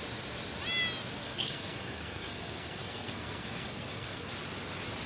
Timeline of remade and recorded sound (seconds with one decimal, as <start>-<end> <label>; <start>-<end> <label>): 0.0-1.2 recorded; 1.2-4.3 remade; 4.3-5.1 recorded